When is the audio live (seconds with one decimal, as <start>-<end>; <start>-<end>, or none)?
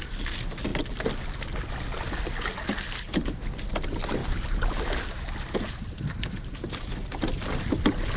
0.0-8.2